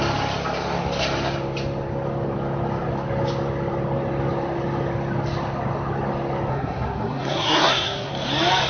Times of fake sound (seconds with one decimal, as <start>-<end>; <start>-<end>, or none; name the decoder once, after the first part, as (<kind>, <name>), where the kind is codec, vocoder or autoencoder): 6.5-8.1 (codec, SNAC)